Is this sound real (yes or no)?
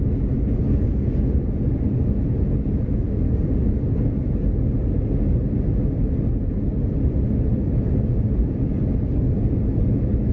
yes